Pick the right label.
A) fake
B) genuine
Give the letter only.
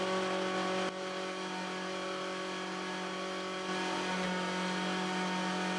B